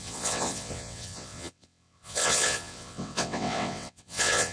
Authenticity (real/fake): fake